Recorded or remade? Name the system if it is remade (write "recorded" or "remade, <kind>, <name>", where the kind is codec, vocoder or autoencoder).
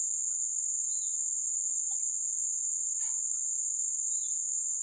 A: recorded